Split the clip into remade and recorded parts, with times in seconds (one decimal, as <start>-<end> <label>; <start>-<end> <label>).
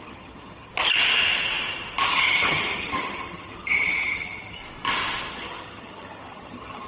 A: 0.0-0.7 remade; 0.7-2.1 recorded; 2.1-4.6 remade; 4.6-5.3 recorded; 5.3-6.9 remade